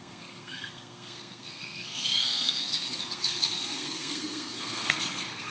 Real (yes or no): no